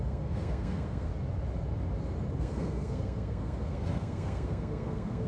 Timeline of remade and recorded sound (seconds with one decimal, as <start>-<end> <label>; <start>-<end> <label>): 0.0-1.1 remade; 1.1-2.4 recorded; 2.4-5.3 remade